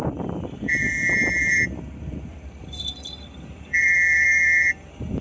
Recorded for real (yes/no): no